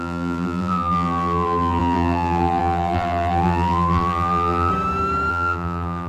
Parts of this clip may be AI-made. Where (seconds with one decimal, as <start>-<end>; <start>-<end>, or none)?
0.0-4.7; 5.3-6.1